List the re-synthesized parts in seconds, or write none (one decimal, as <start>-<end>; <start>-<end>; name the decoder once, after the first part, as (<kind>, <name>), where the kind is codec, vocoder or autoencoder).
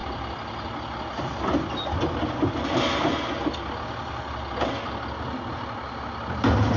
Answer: none